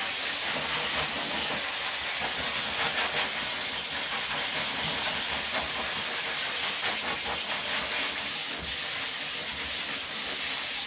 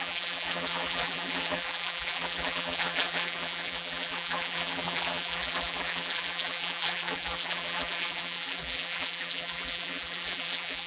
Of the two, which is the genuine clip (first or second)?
first